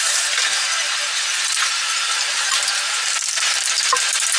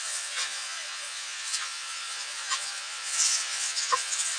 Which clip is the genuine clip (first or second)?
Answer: first